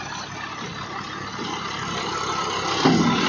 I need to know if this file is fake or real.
real